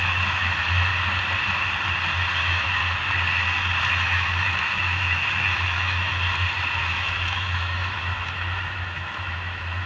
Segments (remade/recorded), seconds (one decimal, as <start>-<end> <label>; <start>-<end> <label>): 0.0-0.9 remade; 0.9-2.4 recorded; 2.4-2.8 remade; 2.8-3.9 recorded; 3.9-6.1 remade; 6.1-6.8 recorded; 6.8-9.9 remade